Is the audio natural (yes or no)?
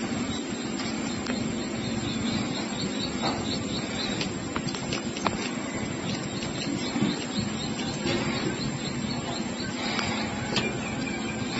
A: yes